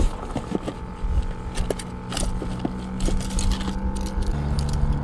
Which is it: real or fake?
real